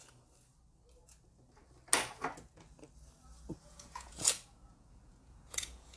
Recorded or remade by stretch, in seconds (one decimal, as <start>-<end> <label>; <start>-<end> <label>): 0.0-3.6 recorded; 3.6-6.0 remade